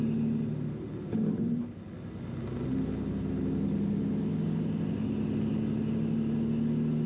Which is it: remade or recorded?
recorded